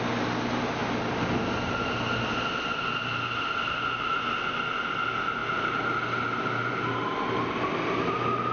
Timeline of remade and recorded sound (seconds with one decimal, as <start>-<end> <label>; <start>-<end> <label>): 0.0-8.5 recorded